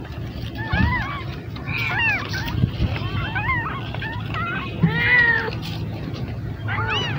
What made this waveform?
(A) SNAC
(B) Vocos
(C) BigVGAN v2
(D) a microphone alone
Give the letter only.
D